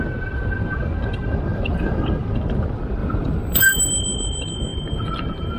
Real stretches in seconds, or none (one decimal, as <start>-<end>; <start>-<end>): 0.0-1.5; 2.1-3.0; 3.9-4.7